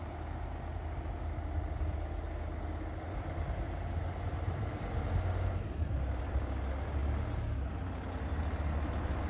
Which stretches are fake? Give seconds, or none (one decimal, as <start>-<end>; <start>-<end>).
none